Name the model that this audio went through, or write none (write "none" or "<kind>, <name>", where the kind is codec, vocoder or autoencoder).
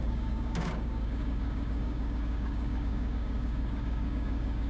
codec, DAC